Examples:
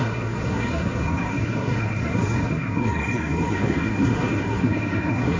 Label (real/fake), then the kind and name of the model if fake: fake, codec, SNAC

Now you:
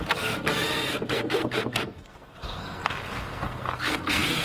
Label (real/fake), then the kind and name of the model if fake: fake, codec, SNAC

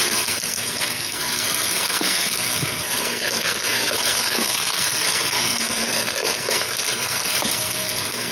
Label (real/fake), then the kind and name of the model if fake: fake, codec, SNAC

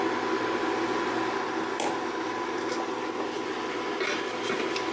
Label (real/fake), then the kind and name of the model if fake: real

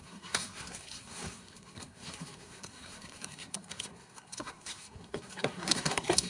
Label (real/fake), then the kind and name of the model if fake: fake, codec, SNAC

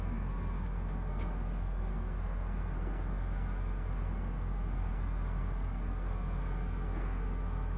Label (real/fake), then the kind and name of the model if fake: fake, codec, SNAC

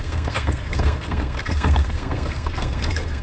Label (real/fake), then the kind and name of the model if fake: fake, codec, SNAC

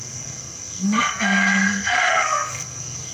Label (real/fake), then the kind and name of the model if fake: fake, codec, SNAC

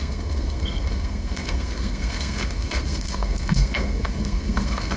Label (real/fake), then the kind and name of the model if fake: fake, codec, SNAC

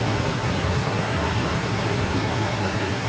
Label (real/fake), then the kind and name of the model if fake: fake, codec, SNAC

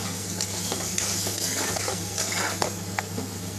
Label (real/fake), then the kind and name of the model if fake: fake, codec, SNAC